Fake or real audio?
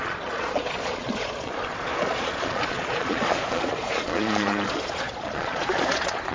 fake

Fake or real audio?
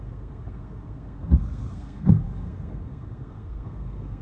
fake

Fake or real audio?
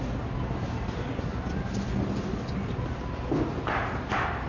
real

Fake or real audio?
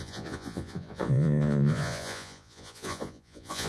fake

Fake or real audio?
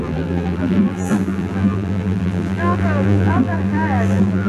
fake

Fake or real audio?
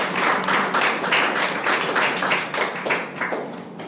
real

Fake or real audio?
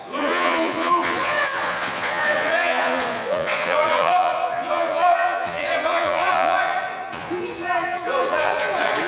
fake